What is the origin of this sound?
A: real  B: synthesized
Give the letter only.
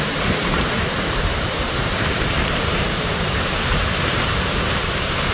B